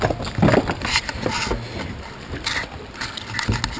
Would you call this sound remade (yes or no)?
no